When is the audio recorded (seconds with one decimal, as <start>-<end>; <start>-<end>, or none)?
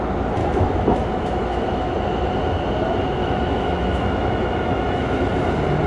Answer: 0.0-0.4; 1.9-3.2; 5.5-5.9